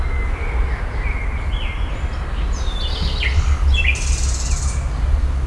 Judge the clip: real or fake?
real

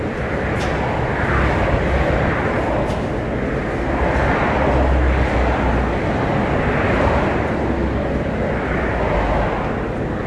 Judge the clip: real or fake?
real